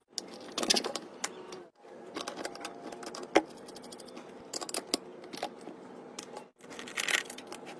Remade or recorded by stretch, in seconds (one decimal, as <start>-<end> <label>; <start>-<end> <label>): 0.0-7.8 recorded